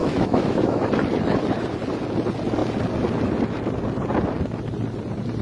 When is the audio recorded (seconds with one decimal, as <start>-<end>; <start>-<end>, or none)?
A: 0.8-5.4

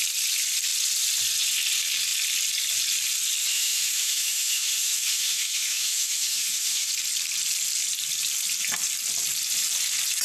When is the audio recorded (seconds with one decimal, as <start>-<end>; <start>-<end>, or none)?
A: 0.0-3.5; 6.9-10.2